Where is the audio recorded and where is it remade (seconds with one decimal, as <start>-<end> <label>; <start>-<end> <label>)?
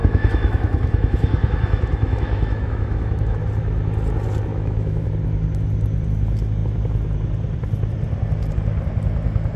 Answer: 0.0-3.4 remade; 3.4-4.5 recorded; 4.5-5.1 remade; 5.1-9.6 recorded